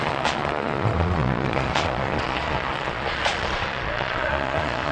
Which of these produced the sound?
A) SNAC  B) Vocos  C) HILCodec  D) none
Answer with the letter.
B